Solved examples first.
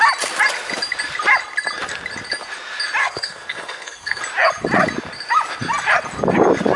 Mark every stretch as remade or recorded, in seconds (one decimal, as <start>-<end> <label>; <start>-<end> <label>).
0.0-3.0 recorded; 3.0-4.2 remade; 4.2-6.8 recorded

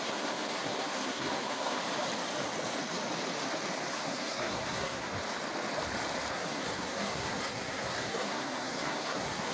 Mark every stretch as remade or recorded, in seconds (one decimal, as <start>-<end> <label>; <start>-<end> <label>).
0.0-1.8 remade; 1.8-3.9 recorded; 3.9-5.1 remade; 5.1-6.3 recorded; 6.3-9.5 remade

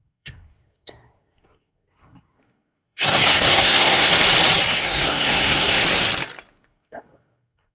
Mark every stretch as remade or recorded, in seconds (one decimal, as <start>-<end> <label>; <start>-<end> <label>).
0.0-4.1 remade; 4.1-4.7 recorded; 4.7-5.8 remade; 5.8-6.5 recorded; 6.5-7.7 remade

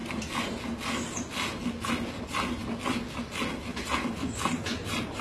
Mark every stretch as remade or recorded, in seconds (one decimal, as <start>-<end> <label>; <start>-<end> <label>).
0.0-3.7 recorded; 3.7-5.2 remade

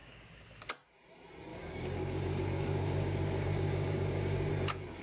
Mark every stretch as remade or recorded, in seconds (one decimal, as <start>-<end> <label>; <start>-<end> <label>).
0.0-0.7 remade; 0.7-1.5 recorded; 1.5-4.5 remade; 4.5-5.0 recorded

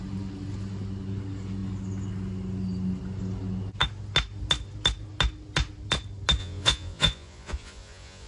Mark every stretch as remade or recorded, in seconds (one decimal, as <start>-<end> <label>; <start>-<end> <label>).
0.0-6.4 recorded; 6.4-8.3 remade